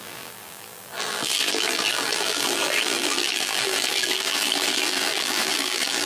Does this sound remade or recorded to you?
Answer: remade